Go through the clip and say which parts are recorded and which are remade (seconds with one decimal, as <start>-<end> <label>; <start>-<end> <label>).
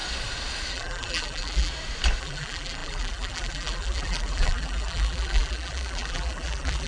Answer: 0.0-0.7 recorded; 0.7-1.7 remade; 1.7-2.2 recorded; 2.2-6.9 remade